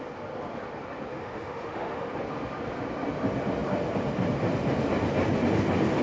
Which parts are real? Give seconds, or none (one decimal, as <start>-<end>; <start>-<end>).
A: 0.0-1.2; 2.1-6.0